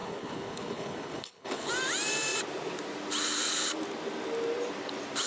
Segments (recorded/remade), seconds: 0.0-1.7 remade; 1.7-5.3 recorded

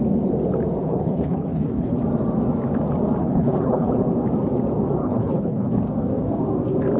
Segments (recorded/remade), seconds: 0.0-0.8 recorded; 0.8-1.9 remade; 1.9-3.2 recorded; 3.2-4.0 remade; 4.0-5.0 recorded; 5.0-5.8 remade; 5.8-7.0 recorded

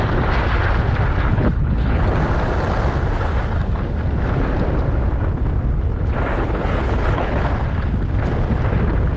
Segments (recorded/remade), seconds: 0.0-1.3 recorded; 1.3-2.0 remade; 2.0-6.3 recorded; 6.3-7.4 remade; 7.4-9.2 recorded

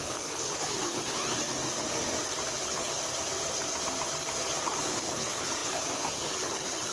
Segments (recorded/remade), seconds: 0.0-1.0 remade; 1.0-2.5 recorded; 2.5-3.0 remade; 3.0-4.6 recorded; 4.6-6.9 remade

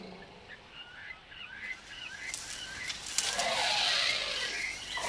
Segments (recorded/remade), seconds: 0.0-5.1 recorded

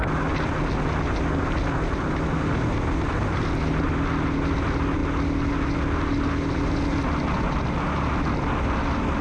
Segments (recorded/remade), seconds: 0.0-9.2 recorded